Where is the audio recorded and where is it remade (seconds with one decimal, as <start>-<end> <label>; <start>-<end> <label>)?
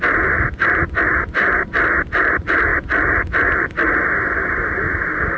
0.0-5.4 recorded